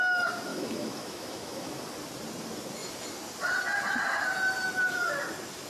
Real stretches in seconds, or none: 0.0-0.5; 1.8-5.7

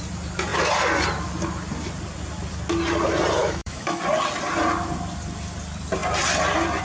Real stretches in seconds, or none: 0.0-3.4; 4.0-6.8

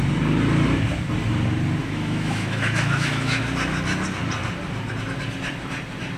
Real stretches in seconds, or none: 0.0-1.8; 3.4-6.2

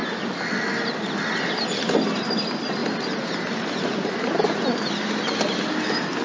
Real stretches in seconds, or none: 0.0-6.2

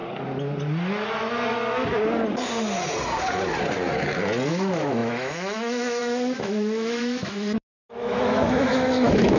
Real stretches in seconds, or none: 0.0-4.5

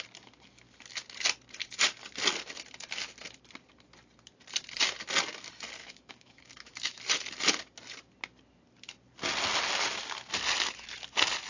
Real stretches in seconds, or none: 0.0-5.8; 7.0-11.5

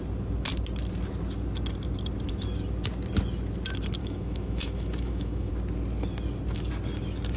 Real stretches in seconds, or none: 0.0-4.0; 5.5-7.4